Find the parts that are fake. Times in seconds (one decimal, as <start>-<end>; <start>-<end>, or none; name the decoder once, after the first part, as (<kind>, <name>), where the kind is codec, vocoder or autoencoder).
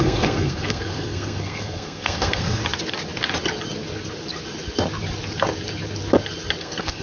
0.0-2.6 (codec, SNAC); 6.6-7.0